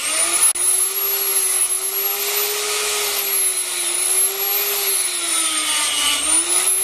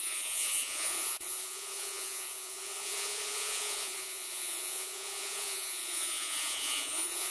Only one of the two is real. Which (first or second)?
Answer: first